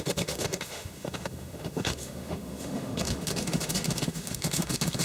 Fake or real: fake